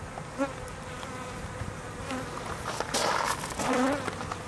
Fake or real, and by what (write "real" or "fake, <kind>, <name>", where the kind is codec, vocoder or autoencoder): real